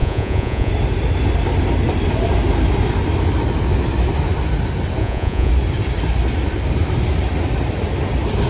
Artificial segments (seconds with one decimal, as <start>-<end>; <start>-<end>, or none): 0.0-0.7; 5.0-5.5